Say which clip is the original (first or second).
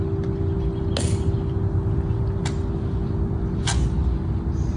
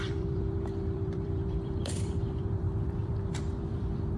first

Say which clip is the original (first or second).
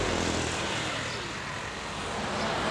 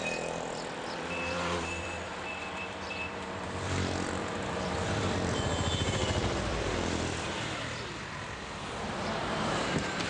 first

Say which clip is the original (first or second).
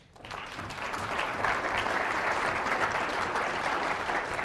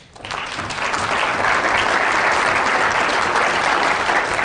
second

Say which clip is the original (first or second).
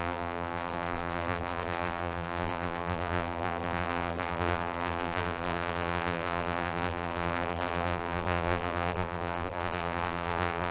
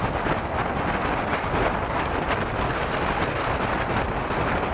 second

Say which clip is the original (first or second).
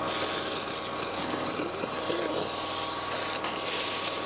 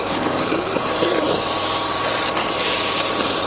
first